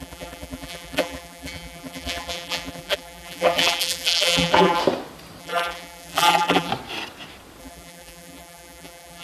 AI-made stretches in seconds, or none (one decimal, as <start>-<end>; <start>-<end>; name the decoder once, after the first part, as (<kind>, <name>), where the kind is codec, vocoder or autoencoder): 0.0-4.8 (vocoder, BigVGAN v2); 5.4-6.7; 7.6-9.2